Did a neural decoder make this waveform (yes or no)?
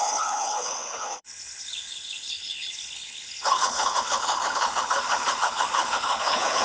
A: yes